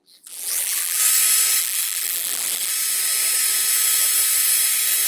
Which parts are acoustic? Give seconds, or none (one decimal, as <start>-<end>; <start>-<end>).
1.0-1.6; 2.7-5.1